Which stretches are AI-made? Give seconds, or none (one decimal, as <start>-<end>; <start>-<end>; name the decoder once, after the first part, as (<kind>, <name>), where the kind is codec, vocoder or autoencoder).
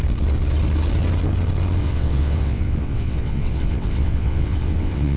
1.8-5.2 (vocoder, WaveNeXt)